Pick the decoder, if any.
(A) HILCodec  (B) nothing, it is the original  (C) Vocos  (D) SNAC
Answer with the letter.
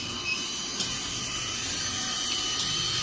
B